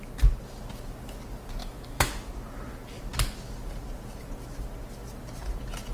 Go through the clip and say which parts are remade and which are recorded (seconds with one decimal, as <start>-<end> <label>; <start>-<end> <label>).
0.0-1.6 recorded; 1.6-2.3 remade; 2.3-5.9 recorded